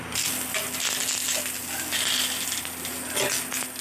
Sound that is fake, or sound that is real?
real